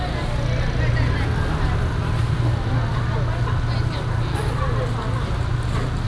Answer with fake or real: real